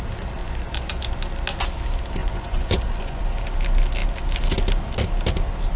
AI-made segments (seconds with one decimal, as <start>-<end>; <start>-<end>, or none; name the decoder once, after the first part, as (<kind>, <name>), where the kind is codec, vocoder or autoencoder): 0.4-1.0 (vocoder, Vocos); 2.2-3.2